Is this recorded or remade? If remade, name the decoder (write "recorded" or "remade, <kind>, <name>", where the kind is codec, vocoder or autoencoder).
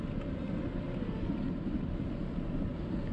recorded